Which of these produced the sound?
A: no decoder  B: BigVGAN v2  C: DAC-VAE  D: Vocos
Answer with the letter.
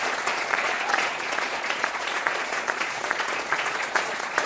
D